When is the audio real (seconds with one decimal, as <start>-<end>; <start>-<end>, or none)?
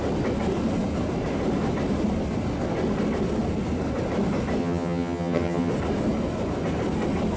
0.0-4.6; 5.7-7.4